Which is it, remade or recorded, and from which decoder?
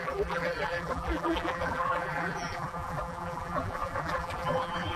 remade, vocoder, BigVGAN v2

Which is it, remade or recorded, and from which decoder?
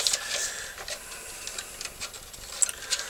recorded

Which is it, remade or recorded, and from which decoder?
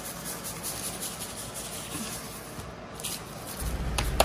recorded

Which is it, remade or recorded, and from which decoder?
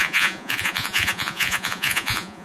remade, vocoder, Vocos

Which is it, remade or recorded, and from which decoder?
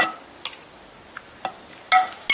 recorded